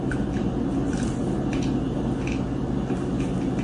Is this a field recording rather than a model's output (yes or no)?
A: yes